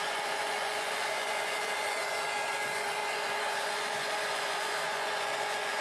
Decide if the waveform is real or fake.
fake